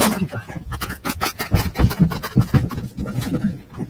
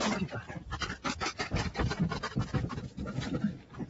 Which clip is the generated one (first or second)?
first